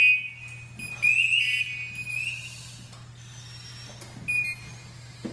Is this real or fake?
real